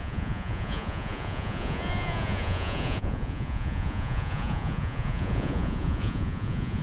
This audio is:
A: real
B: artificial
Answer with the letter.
B